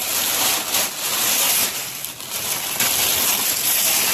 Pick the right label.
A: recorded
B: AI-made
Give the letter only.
A